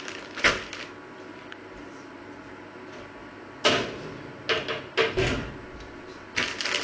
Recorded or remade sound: recorded